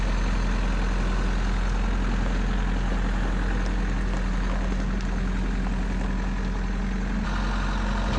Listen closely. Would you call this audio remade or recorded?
recorded